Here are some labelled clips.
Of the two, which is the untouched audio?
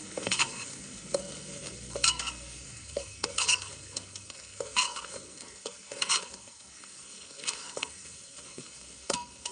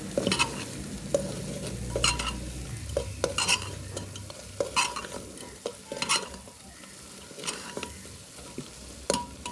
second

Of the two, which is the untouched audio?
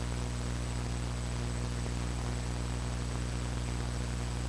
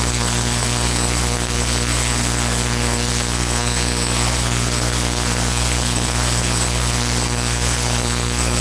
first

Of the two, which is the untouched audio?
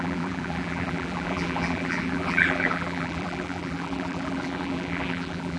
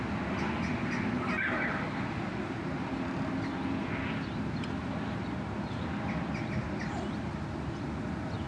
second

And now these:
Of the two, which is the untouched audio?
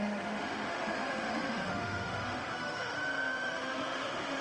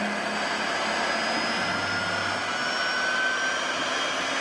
second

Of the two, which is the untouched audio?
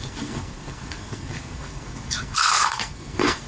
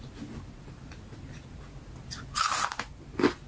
second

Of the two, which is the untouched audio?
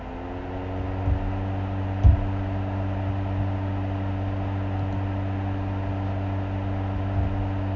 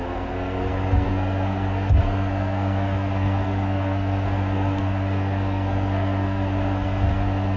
first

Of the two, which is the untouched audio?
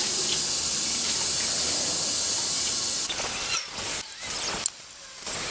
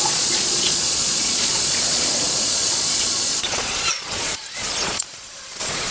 first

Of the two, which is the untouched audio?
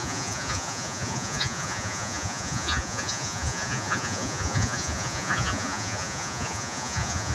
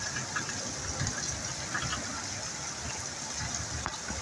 second